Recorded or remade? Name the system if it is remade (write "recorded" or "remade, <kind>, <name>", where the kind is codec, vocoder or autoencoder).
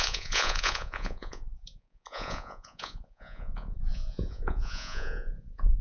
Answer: remade, vocoder, Vocos